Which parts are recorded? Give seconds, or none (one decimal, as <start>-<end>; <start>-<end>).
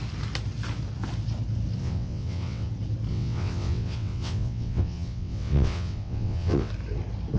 0.0-1.8; 2.7-3.1; 6.7-7.4